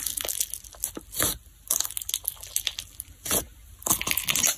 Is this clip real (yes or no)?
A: yes